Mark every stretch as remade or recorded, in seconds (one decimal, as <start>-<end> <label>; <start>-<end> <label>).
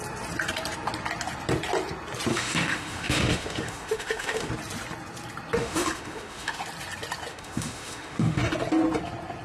0.0-2.3 recorded; 2.3-4.5 remade; 4.5-5.6 recorded; 5.6-6.6 remade; 6.6-7.3 recorded; 7.3-8.4 remade; 8.4-9.4 recorded